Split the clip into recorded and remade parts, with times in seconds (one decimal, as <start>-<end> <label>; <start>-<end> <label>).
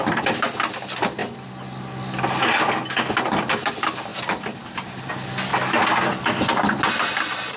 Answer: 0.0-7.6 recorded